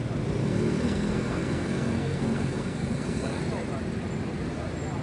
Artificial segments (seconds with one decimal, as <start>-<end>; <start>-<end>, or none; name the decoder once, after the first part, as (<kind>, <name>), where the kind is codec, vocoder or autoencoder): 0.4-3.4 (codec, SNAC)